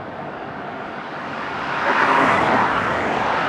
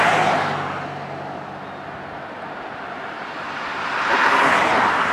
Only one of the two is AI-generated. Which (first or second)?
first